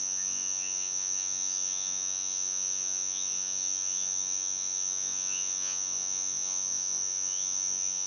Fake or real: fake